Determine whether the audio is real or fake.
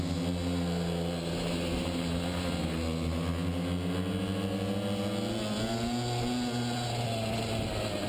real